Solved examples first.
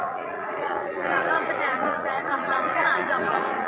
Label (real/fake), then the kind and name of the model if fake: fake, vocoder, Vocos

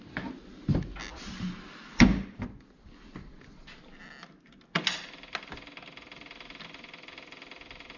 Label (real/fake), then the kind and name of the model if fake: real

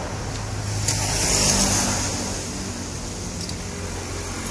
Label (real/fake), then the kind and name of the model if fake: real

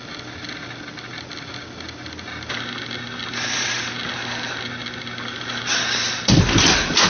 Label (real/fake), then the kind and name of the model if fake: real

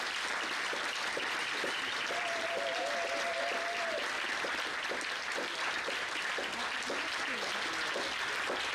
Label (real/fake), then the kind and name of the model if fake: real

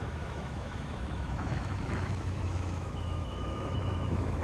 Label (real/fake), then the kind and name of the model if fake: fake, autoencoder, DAC-VAE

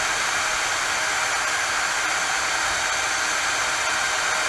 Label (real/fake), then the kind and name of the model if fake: real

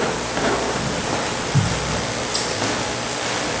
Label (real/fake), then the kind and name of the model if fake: real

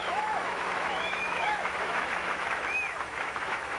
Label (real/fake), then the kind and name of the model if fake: fake, autoencoder, DAC-VAE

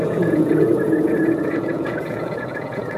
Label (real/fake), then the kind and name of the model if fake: fake, vocoder, Vocos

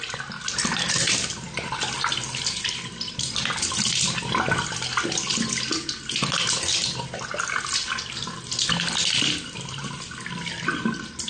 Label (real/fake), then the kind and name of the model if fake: real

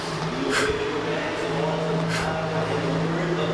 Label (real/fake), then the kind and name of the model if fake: real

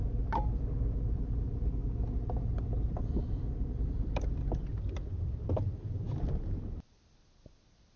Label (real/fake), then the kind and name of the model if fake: real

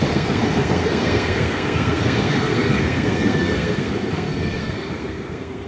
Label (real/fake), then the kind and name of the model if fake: fake, codec, SNAC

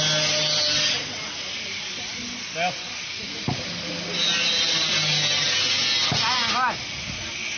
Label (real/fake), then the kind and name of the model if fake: real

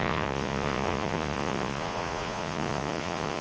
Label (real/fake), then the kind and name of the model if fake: fake, vocoder, Vocos